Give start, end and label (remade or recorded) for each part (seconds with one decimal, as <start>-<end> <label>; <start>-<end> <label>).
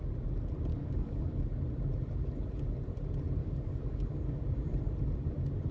0.0-0.7 recorded; 0.7-1.4 remade; 1.4-3.4 recorded; 3.4-4.4 remade; 4.4-5.7 recorded